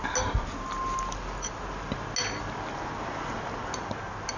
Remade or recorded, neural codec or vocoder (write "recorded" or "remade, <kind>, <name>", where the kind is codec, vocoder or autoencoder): recorded